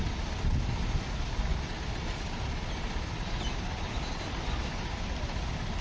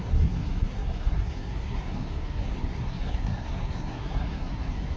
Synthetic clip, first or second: second